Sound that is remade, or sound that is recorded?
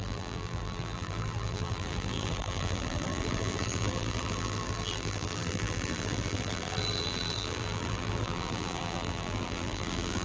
remade